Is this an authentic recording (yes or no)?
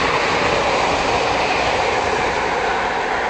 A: yes